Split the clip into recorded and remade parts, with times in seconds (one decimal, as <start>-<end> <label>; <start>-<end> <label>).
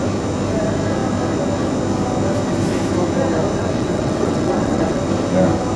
0.0-3.6 recorded; 3.6-5.0 remade; 5.0-5.8 recorded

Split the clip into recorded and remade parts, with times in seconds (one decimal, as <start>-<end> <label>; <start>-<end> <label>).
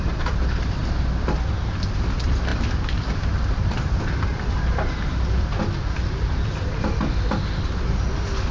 0.0-8.5 recorded